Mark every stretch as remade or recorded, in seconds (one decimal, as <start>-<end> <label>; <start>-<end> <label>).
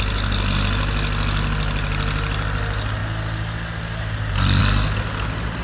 0.0-5.6 recorded